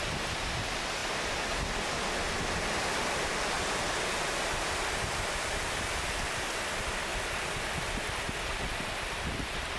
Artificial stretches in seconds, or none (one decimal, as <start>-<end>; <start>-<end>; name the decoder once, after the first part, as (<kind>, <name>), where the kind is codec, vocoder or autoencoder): none